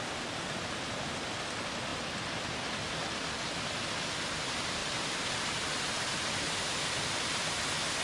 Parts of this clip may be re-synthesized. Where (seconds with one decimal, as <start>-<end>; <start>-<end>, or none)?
4.8-7.0